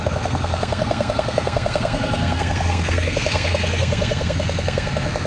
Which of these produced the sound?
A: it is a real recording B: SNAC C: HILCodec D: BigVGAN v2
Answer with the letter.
B